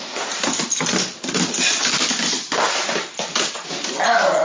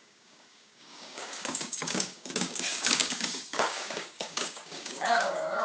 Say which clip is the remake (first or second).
second